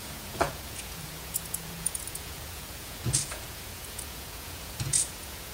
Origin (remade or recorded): remade